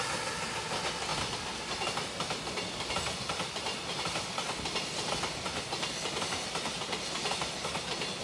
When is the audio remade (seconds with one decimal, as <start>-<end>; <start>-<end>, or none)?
none